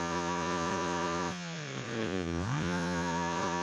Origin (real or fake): fake